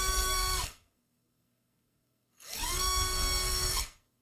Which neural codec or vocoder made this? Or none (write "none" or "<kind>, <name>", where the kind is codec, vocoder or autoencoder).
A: codec, SNAC